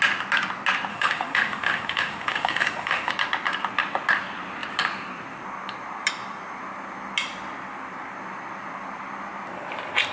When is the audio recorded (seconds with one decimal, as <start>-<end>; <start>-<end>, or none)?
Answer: 0.0-0.9; 3.1-10.1